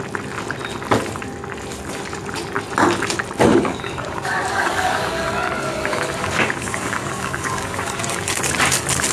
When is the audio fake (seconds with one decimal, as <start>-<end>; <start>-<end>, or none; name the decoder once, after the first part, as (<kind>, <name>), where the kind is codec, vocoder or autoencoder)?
3.5-8.5 (codec, DAC)